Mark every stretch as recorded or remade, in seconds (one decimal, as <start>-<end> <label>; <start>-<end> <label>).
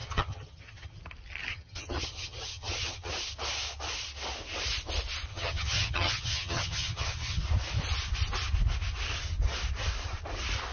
0.0-1.0 remade; 1.0-1.5 recorded; 1.5-3.1 remade; 3.1-5.3 recorded; 5.3-7.4 remade; 7.4-10.7 recorded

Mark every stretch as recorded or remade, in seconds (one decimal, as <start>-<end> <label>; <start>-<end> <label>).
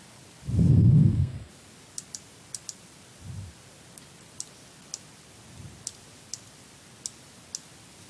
0.0-0.7 recorded; 0.7-1.5 remade; 1.5-8.1 recorded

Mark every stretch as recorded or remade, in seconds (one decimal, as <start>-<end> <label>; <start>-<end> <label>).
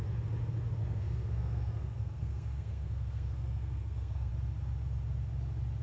0.0-0.8 recorded; 0.8-4.3 remade; 4.3-5.8 recorded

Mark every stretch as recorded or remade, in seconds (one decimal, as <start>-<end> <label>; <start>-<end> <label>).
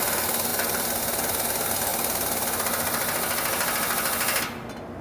0.0-5.0 recorded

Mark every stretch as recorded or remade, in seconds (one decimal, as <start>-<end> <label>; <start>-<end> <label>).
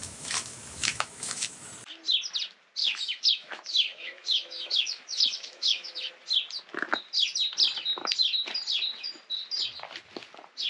0.0-1.7 remade; 1.7-2.8 recorded; 2.8-6.1 remade; 6.1-10.7 recorded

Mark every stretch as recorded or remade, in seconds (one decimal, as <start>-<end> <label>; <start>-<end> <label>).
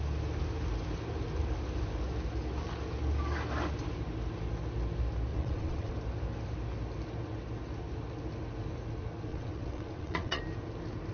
0.0-5.3 recorded; 5.3-5.9 remade; 5.9-9.3 recorded; 9.3-10.4 remade; 10.4-11.1 recorded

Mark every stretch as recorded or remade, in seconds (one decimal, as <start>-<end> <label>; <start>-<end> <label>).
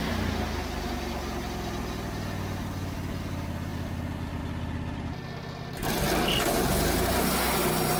0.0-8.0 recorded